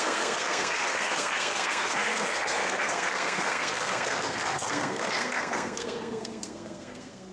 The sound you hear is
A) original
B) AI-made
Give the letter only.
B